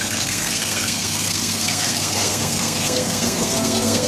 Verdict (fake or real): fake